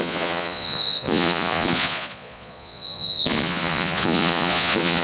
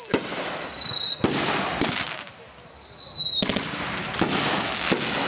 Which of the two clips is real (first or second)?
second